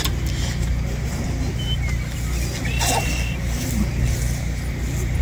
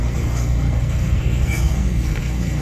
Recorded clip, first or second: first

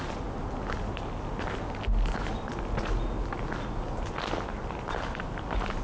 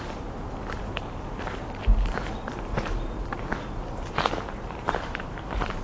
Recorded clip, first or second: first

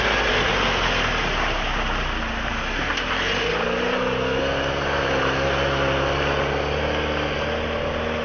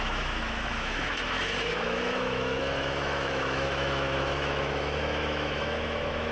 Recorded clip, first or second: first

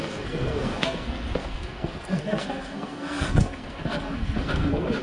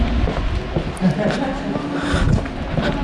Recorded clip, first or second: second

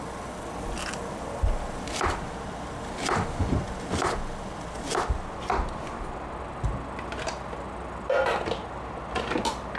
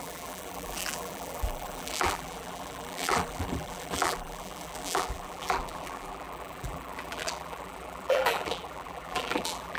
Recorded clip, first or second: first